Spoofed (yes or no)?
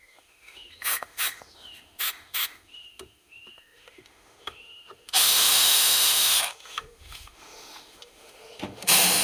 yes